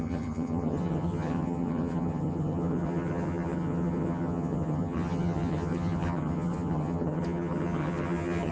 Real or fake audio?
fake